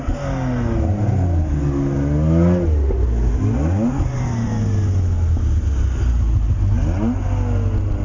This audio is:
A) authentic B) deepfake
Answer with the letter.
A